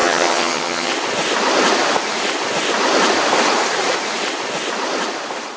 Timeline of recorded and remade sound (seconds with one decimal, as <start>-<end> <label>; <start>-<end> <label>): 0.0-0.9 remade; 0.9-5.6 recorded

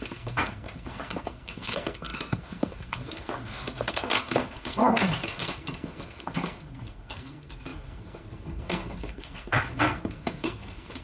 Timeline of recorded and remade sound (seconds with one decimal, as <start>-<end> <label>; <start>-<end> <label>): 0.0-11.0 remade

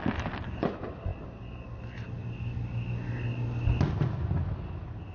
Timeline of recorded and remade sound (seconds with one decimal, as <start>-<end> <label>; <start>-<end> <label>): 0.0-5.1 recorded

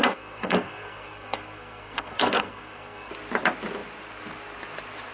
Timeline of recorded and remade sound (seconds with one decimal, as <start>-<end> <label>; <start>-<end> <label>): 0.0-3.1 remade; 3.1-5.1 recorded

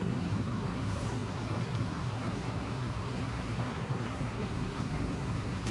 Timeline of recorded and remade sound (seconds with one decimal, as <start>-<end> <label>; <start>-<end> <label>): 0.0-5.7 remade

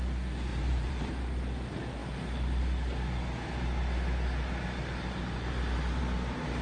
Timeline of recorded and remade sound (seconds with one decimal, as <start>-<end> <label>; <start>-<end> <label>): 0.0-0.5 recorded; 0.5-1.2 remade; 1.2-6.6 recorded